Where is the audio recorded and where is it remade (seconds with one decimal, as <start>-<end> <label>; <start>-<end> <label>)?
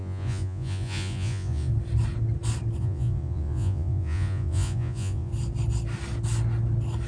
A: 0.0-1.7 remade; 1.7-2.8 recorded; 2.8-5.3 remade; 5.3-7.1 recorded